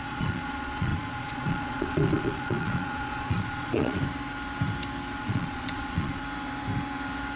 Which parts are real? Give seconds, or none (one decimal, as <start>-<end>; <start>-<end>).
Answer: 4.0-5.2; 6.2-7.4